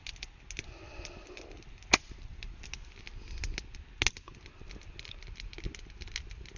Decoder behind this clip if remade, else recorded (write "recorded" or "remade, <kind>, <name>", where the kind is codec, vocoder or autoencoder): recorded